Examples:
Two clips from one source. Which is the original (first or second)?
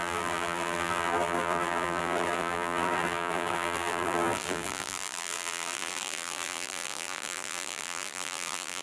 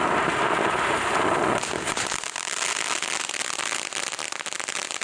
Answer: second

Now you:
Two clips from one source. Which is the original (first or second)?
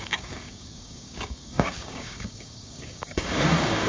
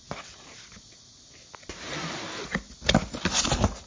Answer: second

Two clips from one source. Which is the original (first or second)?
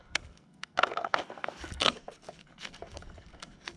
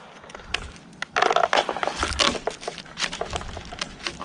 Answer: second